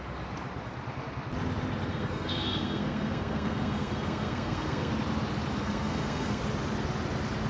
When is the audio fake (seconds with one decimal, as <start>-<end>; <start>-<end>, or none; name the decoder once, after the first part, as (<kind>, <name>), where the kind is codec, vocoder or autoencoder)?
1.9-4.9 (codec, SNAC); 5.6-6.4